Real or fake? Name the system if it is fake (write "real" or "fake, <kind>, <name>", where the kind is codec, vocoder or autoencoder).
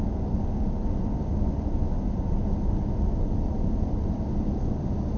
real